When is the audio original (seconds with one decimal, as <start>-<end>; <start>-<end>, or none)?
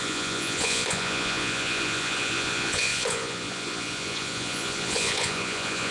none